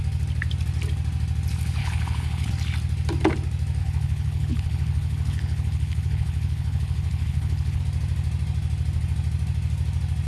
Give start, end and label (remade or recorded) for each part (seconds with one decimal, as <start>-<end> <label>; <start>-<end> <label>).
0.0-1.8 recorded; 1.8-2.5 remade; 2.5-3.8 recorded; 3.8-7.8 remade; 7.8-10.3 recorded